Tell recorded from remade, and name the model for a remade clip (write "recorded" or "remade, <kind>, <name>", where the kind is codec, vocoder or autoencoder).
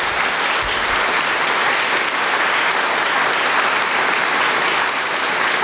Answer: recorded